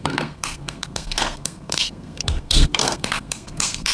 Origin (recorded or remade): remade